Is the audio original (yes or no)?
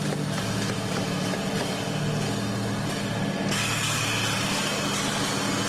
yes